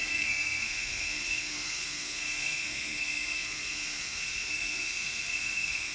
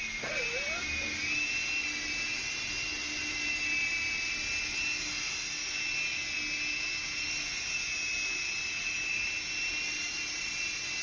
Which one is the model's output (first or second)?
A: first